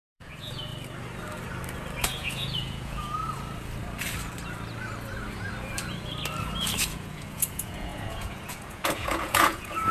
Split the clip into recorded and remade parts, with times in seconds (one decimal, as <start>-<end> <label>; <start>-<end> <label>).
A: 0.0-0.7 remade; 0.7-2.0 recorded; 2.0-3.2 remade; 3.2-6.8 recorded; 6.8-9.9 remade